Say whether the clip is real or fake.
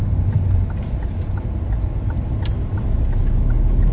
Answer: real